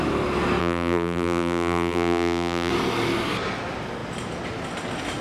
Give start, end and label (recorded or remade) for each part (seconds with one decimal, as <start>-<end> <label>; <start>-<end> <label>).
0.0-0.6 recorded; 0.6-2.7 remade; 2.7-5.2 recorded